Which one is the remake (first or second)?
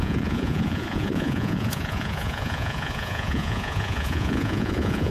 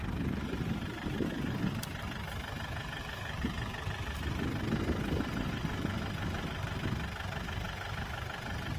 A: first